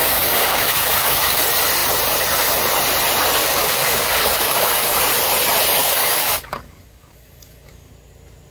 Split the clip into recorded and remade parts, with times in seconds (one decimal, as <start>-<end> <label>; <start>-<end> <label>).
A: 0.0-1.4 remade; 1.4-3.4 recorded; 3.4-5.0 remade; 5.0-5.8 recorded; 5.8-7.9 remade; 7.9-8.5 recorded